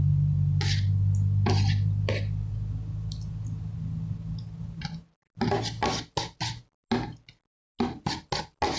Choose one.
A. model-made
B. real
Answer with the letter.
B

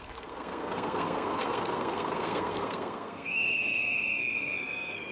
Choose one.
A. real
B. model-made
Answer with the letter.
B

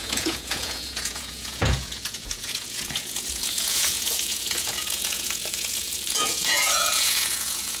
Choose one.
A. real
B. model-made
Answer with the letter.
B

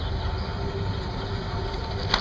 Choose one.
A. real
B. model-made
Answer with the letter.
A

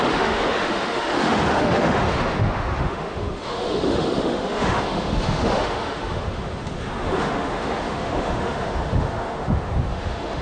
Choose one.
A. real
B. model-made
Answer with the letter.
B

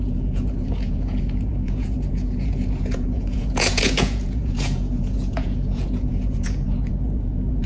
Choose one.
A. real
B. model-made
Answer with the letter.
B